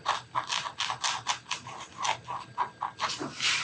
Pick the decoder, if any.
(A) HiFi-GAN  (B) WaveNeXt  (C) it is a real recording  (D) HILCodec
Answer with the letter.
C